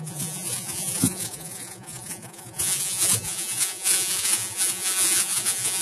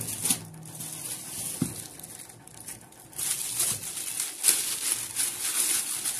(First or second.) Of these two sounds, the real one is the second